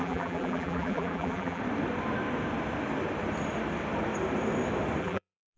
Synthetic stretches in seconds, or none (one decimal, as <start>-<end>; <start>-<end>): 0.0-1.6; 5.0-5.6